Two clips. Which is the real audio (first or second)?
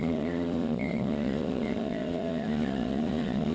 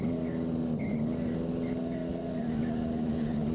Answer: second